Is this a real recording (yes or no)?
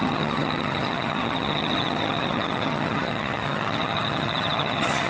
no